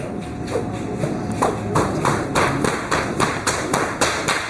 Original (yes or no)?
yes